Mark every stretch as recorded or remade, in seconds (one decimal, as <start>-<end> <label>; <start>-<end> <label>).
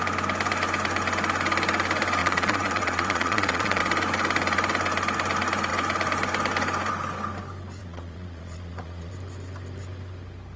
0.0-2.2 recorded; 2.2-3.8 remade; 3.8-7.8 recorded; 7.8-9.1 remade; 9.1-10.6 recorded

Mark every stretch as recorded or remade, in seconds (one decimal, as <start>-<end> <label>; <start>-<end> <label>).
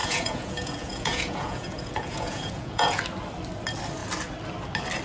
0.0-3.0 remade; 3.0-5.0 recorded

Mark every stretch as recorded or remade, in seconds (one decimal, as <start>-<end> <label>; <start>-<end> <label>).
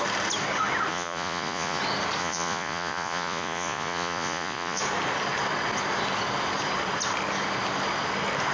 0.0-0.9 recorded; 0.9-1.8 remade; 1.8-2.2 recorded; 2.2-4.8 remade; 4.8-8.5 recorded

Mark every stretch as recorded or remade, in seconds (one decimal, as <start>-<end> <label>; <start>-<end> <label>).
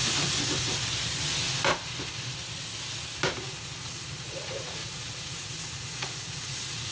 0.0-3.8 recorded; 3.8-6.9 remade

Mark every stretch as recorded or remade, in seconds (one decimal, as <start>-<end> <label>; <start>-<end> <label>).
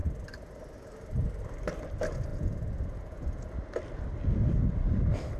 0.0-2.3 recorded; 2.3-3.5 remade; 3.5-5.4 recorded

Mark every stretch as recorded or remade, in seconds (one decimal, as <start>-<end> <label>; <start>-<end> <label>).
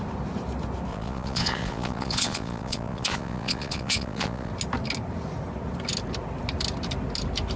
0.0-0.9 recorded; 0.9-4.5 remade; 4.5-7.6 recorded